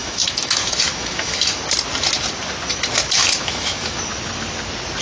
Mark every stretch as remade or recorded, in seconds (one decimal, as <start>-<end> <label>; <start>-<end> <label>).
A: 0.0-1.6 remade; 1.6-3.2 recorded; 3.2-4.0 remade; 4.0-5.0 recorded